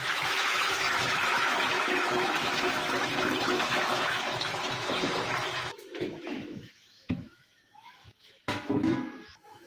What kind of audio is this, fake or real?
fake